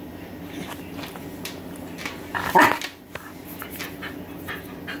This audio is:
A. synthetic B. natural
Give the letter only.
B